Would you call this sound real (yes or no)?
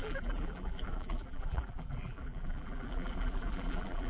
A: no